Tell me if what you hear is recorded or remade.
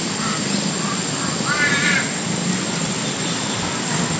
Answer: recorded